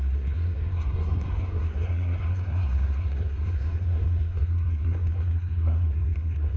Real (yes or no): no